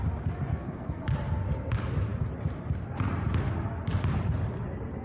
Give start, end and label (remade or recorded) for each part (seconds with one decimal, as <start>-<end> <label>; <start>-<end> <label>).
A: 0.0-0.5 recorded; 0.5-1.0 remade; 1.0-5.0 recorded